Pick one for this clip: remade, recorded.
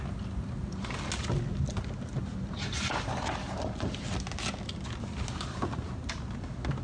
recorded